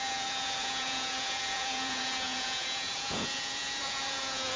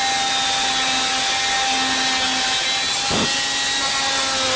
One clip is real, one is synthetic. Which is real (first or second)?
second